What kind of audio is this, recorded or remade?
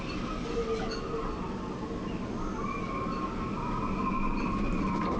recorded